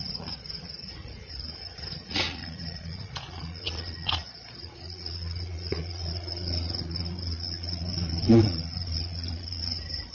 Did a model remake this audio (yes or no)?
yes